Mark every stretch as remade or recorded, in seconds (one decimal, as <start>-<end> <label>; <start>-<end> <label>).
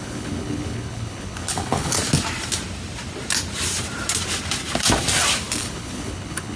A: 0.0-2.0 remade; 2.0-5.6 recorded; 5.6-6.6 remade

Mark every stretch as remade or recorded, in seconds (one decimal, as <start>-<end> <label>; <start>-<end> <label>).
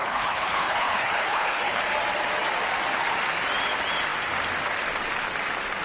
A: 0.0-1.8 remade; 1.8-5.8 recorded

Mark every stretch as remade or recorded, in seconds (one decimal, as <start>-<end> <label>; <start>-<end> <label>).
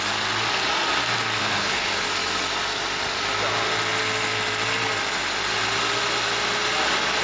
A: 0.0-1.4 recorded; 1.4-2.1 remade; 2.1-7.2 recorded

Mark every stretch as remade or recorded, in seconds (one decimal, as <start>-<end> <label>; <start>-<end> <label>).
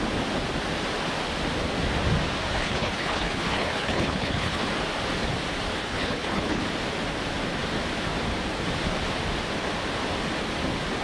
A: 0.0-2.6 recorded; 2.6-4.6 remade; 4.6-5.8 recorded; 5.8-6.6 remade; 6.6-11.0 recorded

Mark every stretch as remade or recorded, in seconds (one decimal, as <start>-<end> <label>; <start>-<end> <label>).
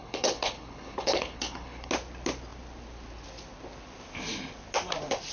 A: 0.0-1.9 remade; 1.9-5.3 recorded